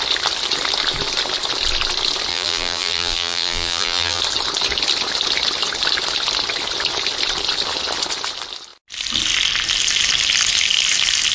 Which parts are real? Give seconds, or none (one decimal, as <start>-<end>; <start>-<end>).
0.0-2.3; 4.2-11.3